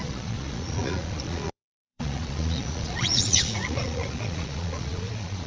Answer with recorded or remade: remade